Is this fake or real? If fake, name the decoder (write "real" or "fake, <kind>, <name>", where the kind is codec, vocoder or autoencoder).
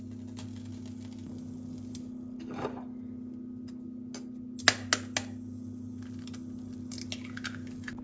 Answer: real